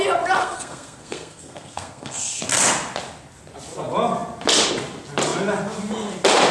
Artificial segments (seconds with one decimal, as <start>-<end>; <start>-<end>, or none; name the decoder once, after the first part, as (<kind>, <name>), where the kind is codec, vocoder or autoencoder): 0.4-2.4 (codec, SNAC)